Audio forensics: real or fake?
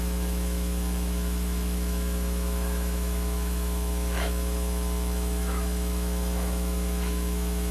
fake